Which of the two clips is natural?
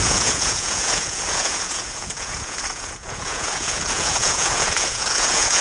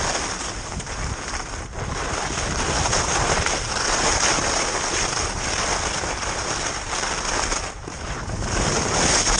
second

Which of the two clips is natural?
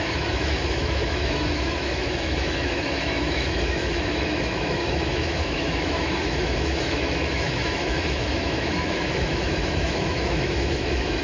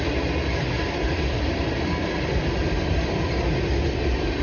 second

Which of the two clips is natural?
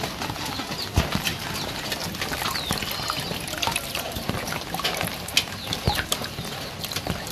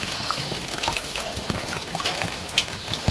first